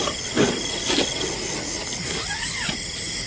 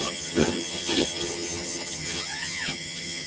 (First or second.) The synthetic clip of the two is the second